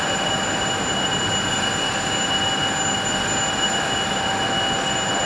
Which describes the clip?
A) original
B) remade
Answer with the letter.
A